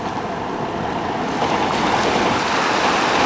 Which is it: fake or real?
real